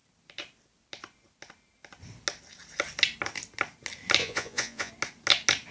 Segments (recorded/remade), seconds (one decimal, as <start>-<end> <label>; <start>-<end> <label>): 0.0-4.2 recorded; 4.2-4.9 remade; 4.9-5.7 recorded